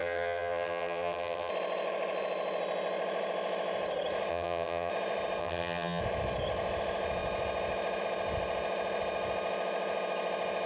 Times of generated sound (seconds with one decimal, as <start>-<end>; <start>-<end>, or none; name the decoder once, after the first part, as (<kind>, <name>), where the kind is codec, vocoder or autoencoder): 0.0-1.5 (vocoder, HiFi-GAN); 4.3-4.9; 5.4-6.0